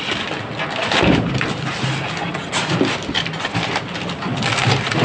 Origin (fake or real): real